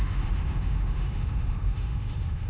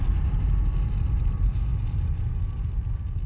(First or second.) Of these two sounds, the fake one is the first